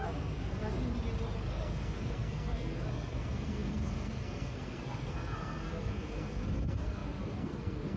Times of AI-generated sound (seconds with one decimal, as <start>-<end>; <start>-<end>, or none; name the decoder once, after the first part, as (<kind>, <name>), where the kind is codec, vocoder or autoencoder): 0.0-0.8 (codec, SNAC); 1.5-8.0